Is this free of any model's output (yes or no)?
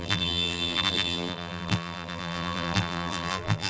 no